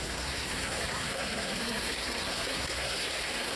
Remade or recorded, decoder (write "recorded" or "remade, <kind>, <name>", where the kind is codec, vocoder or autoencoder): remade, codec, SNAC